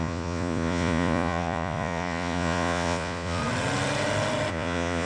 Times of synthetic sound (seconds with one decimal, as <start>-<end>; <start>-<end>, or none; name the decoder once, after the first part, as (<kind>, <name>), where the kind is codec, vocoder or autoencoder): 0.0-3.4 (vocoder, Vocos); 4.5-5.1